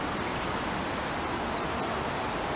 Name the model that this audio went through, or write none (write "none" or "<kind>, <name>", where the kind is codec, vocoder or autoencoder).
none